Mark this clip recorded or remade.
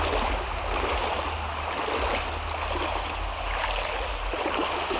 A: recorded